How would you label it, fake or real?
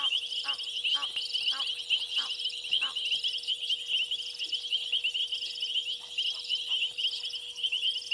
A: real